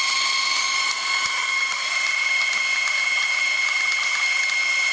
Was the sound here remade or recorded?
recorded